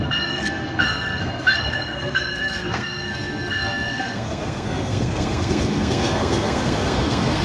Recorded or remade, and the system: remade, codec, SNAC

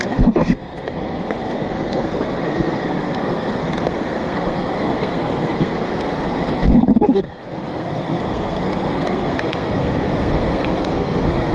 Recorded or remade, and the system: remade, codec, SNAC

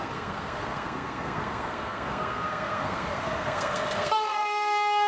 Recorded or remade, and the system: remade, codec, SNAC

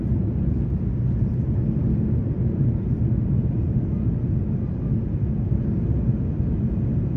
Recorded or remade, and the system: recorded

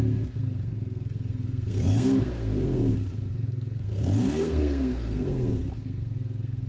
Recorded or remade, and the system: remade, codec, SNAC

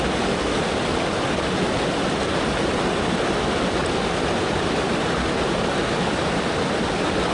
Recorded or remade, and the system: recorded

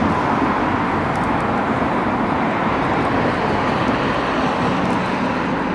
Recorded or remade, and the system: recorded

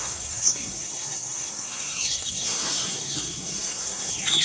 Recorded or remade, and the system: remade, codec, SNAC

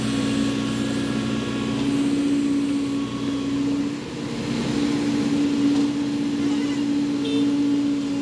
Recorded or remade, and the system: recorded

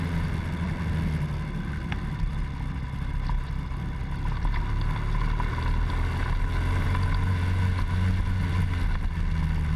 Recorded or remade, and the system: recorded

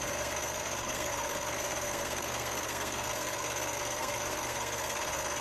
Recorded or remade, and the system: remade, codec, SNAC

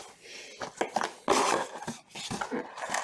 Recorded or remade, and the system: recorded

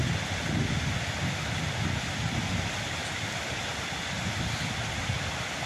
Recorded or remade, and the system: recorded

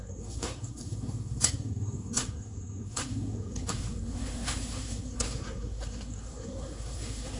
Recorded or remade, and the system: remade, codec, SNAC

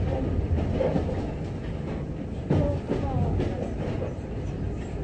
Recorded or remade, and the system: recorded